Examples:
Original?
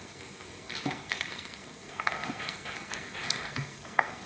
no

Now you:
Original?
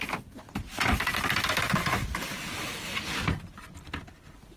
yes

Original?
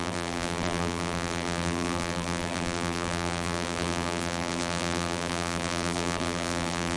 no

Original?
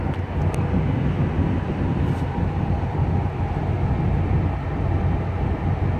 yes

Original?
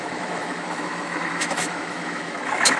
no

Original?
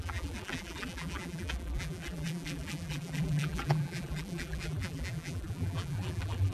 no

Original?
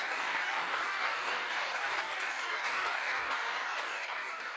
no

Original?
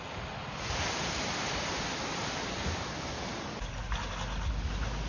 yes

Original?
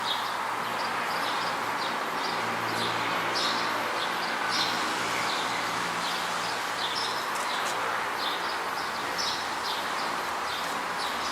yes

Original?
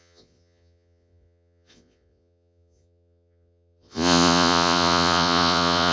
no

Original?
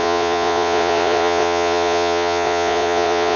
no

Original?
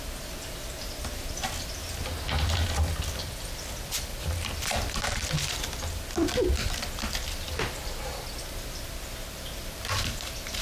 yes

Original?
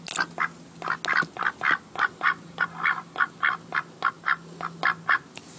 yes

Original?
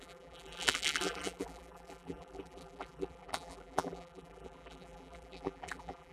no